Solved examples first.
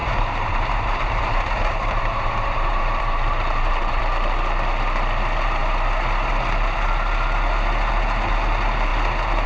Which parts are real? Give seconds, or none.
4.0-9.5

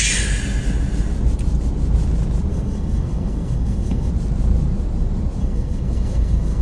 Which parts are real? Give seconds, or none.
0.0-2.5; 4.1-5.4